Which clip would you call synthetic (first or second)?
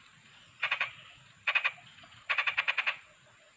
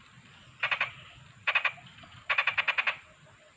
first